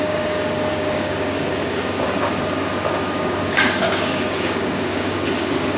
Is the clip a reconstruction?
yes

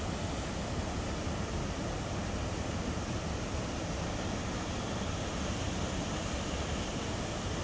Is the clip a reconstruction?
no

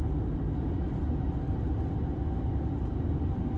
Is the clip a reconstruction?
no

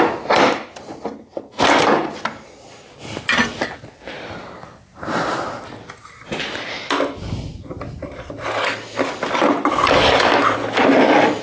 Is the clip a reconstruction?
no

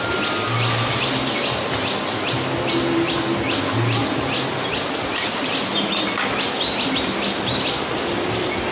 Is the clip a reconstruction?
no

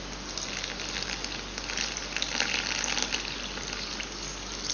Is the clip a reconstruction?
no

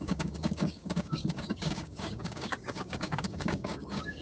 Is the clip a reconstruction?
yes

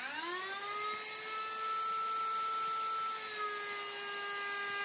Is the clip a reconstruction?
no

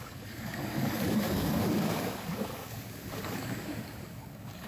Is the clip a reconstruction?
yes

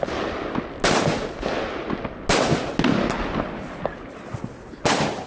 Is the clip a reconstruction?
no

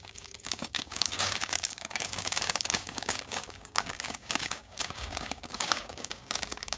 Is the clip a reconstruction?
yes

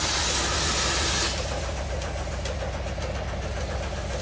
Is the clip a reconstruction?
no